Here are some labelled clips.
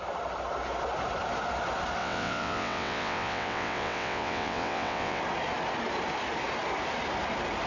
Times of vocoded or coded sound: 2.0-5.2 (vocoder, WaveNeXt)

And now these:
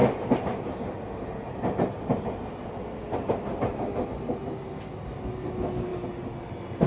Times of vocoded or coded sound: none

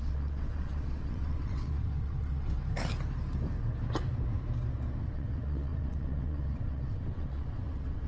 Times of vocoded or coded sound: 0.0-2.6 (vocoder, WaveNeXt); 5.0-8.1

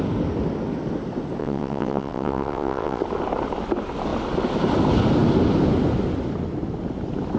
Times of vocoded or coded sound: 1.4-3.0 (vocoder, WaveNeXt)

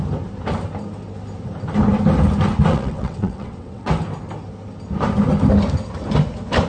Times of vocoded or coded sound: 2.7-3.9 (vocoder, WaveNeXt)

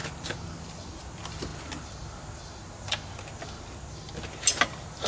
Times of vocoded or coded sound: none

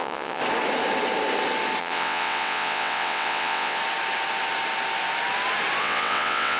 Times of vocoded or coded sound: 0.0-0.4 (vocoder, WaveNeXt); 1.8-3.8; 5.8-6.6

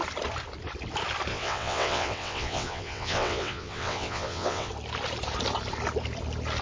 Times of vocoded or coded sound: 1.3-4.7 (vocoder, WaveNeXt)